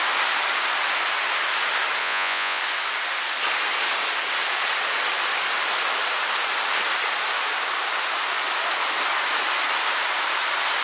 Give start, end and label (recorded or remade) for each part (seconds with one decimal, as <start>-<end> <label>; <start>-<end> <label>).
0.0-2.0 recorded; 2.0-2.6 remade; 2.6-10.8 recorded

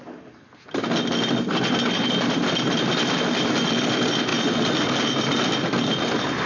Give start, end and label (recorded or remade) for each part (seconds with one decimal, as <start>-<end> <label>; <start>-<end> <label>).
0.0-6.5 recorded

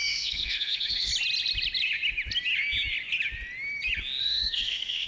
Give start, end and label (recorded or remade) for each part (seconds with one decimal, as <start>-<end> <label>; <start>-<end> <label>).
0.0-1.1 remade; 1.1-4.2 recorded; 4.2-5.1 remade

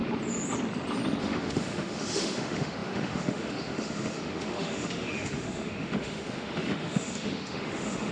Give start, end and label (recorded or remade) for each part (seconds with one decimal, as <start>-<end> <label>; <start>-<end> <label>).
0.0-1.2 recorded; 1.2-8.1 remade